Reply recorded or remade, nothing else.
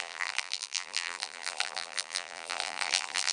remade